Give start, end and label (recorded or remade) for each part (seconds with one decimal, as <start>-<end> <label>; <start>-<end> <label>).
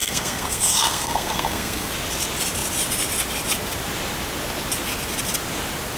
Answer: 0.0-1.9 remade; 1.9-6.0 recorded